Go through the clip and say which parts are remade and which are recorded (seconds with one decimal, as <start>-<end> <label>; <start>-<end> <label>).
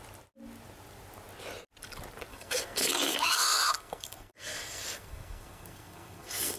0.0-2.3 recorded; 2.3-6.6 remade